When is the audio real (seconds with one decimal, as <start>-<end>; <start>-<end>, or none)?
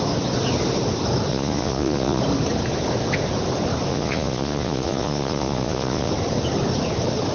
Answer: 0.0-1.3; 2.2-3.9; 6.1-7.3